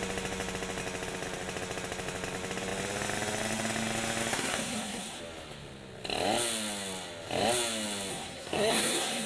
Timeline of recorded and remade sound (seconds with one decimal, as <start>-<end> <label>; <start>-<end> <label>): 0.0-4.3 recorded; 4.3-5.2 remade; 5.2-8.1 recorded; 8.1-9.3 remade